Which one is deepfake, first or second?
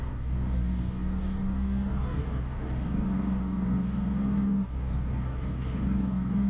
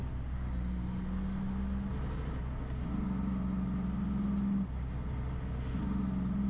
first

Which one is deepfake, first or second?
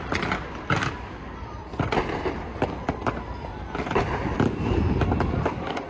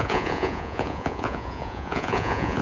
second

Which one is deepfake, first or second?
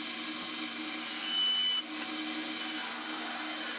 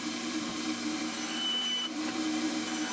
second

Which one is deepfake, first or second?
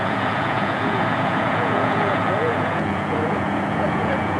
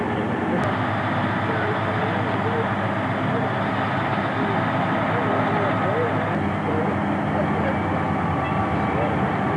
first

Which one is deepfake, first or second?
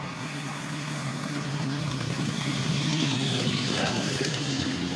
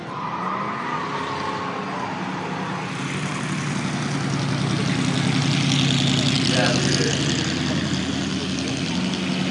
first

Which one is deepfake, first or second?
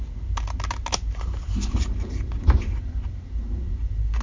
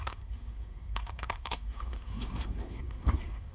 second